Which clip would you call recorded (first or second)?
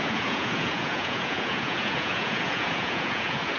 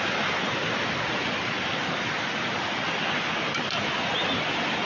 second